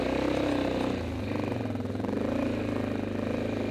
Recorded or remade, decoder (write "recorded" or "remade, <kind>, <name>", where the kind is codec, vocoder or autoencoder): recorded